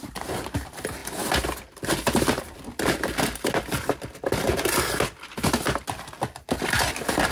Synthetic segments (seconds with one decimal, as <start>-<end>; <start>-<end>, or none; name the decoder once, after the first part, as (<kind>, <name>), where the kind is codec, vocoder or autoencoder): none

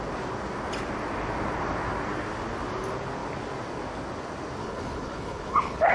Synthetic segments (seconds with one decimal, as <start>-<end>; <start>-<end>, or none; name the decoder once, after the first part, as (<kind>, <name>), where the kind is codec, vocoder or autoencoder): 4.6-5.9 (codec, HILCodec)

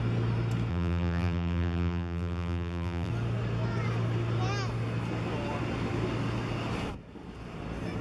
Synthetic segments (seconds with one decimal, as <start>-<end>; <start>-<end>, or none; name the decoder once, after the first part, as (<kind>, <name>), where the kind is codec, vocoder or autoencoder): 0.7-3.1 (vocoder, BigVGAN v2)

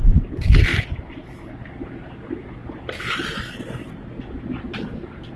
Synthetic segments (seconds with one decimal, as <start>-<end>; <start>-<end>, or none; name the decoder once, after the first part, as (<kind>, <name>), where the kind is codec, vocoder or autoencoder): none

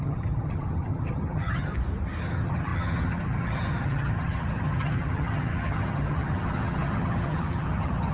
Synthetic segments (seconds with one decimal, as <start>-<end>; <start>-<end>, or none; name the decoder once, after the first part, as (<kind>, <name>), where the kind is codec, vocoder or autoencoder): 0.0-1.7 (vocoder, HiFi-GAN); 2.2-8.1